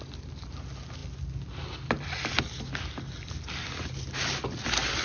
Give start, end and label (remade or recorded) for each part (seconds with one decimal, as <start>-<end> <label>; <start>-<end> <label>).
0.0-5.0 recorded